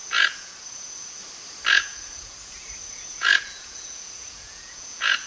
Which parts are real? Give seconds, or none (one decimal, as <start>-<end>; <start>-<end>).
1.2-1.7